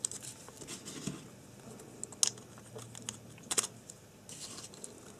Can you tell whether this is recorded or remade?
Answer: recorded